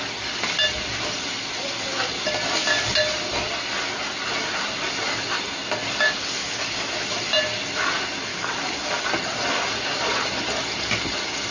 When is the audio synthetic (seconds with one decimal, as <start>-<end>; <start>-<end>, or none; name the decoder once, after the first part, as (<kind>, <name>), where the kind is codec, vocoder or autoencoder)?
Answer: 6.4-7.0 (codec, DAC); 8.3-9.1